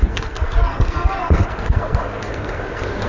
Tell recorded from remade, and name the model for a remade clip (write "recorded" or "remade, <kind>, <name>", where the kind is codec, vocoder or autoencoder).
remade, codec, SNAC